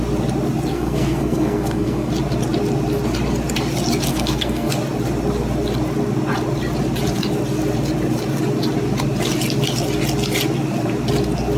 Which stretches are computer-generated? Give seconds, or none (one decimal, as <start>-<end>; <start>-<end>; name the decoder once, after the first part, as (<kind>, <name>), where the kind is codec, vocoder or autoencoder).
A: 0.7-2.1 (codec, SNAC); 4.1-4.7